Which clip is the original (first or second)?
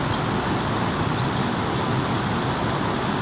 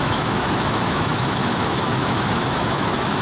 first